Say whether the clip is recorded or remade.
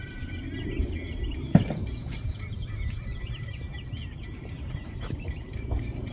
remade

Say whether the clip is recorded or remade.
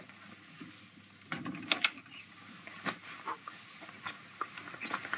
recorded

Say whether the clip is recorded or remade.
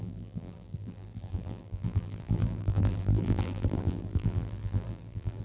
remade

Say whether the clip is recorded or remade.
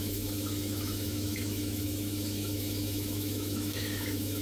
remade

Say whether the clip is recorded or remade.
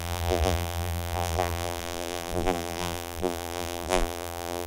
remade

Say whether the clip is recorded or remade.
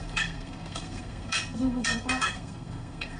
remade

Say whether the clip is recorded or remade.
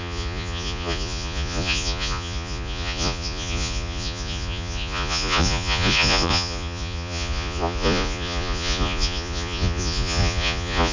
remade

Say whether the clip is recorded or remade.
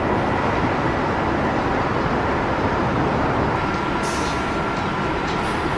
remade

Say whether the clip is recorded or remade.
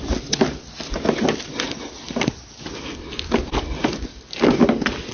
recorded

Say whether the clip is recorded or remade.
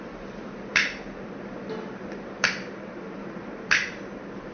recorded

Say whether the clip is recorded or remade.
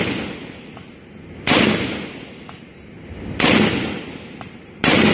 recorded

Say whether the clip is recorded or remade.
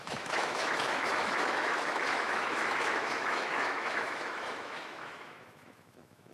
remade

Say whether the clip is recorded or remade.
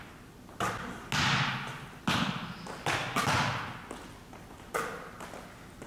recorded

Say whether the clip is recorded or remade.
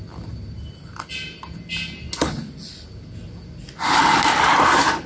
recorded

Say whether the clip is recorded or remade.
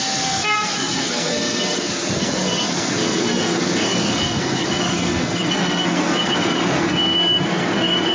remade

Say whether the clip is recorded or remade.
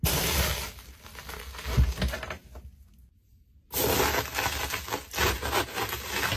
recorded